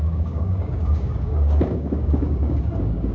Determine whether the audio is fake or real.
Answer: fake